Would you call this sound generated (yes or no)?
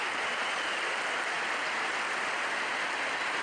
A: no